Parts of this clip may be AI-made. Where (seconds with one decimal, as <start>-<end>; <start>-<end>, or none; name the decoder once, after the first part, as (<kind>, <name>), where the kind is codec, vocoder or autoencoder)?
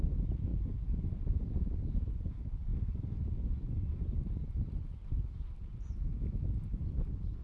none